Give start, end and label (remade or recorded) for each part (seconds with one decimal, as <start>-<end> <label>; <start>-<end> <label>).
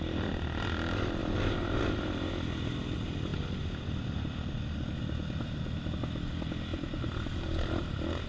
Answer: 0.0-1.2 recorded; 1.2-2.3 remade; 2.3-8.3 recorded